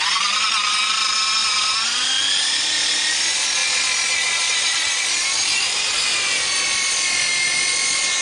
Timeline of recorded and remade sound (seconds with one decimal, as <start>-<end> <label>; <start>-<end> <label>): 0.0-8.2 recorded